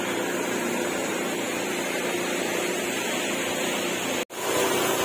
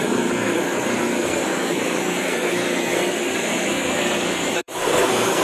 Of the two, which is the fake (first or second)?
second